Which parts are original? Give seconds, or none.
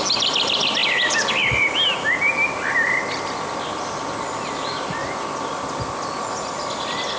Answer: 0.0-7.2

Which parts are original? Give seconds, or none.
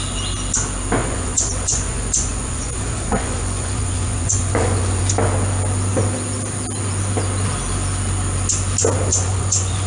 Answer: 0.0-1.0; 5.0-9.1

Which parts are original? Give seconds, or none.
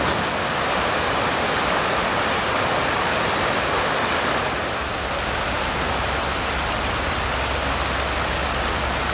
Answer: 0.0-9.1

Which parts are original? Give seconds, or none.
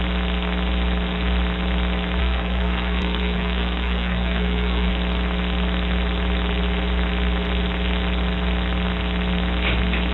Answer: 0.0-2.2; 4.9-10.1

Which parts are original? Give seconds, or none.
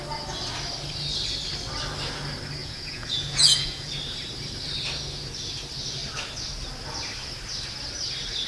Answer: 0.0-2.6; 3.9-8.5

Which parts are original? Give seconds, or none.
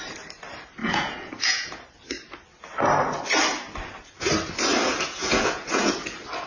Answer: 0.0-0.8; 1.8-4.8; 5.9-6.5